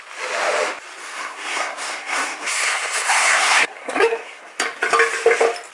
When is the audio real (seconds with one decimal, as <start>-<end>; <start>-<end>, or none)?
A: 0.0-1.0; 4.4-5.7